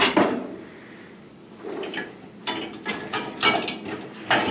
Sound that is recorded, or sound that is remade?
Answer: recorded